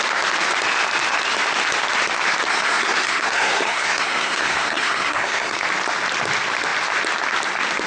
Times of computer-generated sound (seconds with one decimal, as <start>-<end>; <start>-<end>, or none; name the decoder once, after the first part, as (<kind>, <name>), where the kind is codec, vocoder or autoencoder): 2.5-5.6 (codec, SNAC)